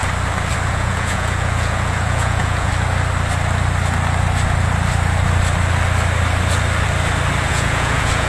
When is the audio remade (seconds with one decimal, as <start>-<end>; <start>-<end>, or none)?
0.7-2.7; 7.5-8.3